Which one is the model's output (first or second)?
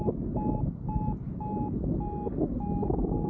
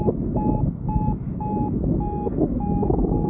second